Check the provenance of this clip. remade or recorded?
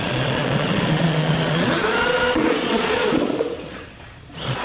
remade